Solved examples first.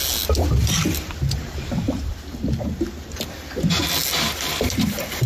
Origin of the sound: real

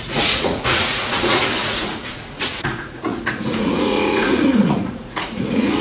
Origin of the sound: fake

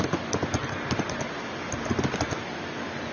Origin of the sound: real